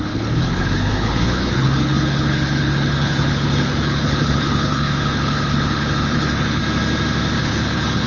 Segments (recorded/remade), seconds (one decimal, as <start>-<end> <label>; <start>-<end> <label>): 0.0-6.6 remade; 6.6-7.4 recorded; 7.4-8.1 remade